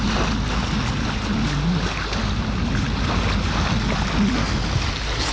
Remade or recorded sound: recorded